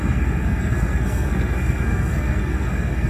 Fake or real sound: fake